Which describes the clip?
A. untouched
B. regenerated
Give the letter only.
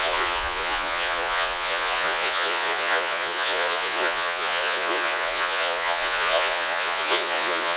B